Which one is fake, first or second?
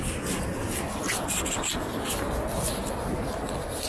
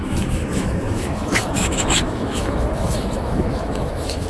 second